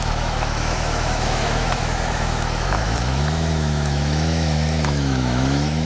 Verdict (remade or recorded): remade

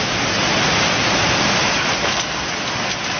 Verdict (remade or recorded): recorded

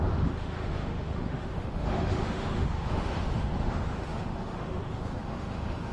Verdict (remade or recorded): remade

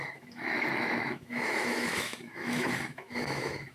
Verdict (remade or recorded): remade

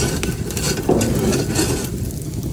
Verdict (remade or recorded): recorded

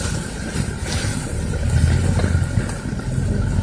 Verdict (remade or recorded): recorded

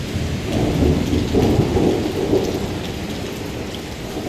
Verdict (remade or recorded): recorded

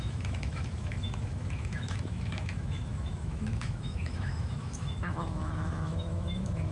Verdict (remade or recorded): remade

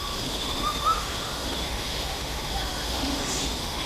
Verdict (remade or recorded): remade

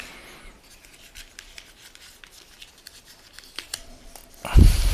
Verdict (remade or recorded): recorded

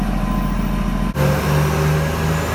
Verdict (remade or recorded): recorded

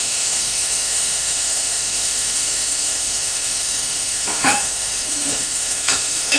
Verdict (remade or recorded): remade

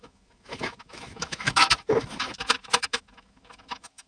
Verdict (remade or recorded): remade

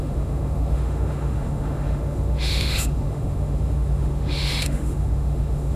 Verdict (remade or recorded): remade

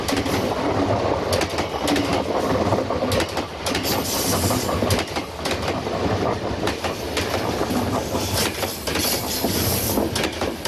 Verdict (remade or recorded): recorded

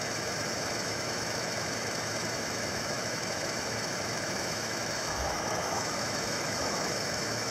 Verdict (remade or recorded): remade